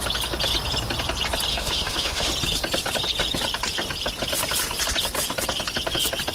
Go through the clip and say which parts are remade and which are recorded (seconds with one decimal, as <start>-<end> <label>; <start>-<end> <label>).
0.0-1.5 recorded; 1.5-2.3 remade; 2.3-6.3 recorded